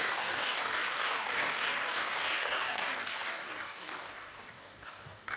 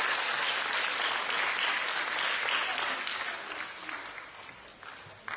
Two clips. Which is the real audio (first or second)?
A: second